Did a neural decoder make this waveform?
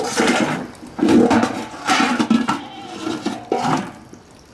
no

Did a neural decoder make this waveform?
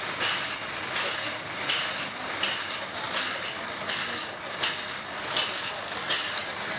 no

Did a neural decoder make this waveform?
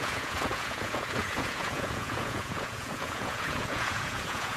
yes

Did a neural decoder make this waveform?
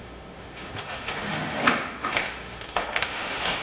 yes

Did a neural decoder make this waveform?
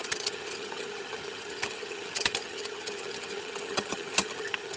yes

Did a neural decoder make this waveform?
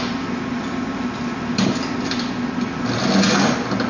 no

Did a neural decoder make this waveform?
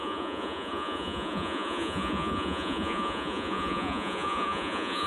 yes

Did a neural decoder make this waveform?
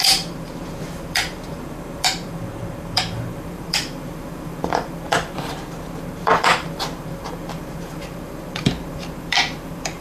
yes